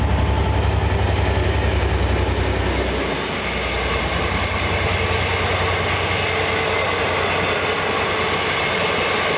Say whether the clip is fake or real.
real